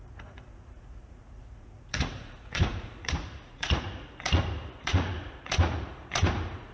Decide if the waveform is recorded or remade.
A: remade